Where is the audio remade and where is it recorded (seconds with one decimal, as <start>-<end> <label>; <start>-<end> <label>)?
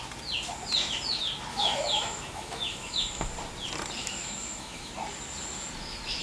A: 0.0-1.5 recorded; 1.5-3.3 remade; 3.3-4.0 recorded; 4.0-4.9 remade; 4.9-6.2 recorded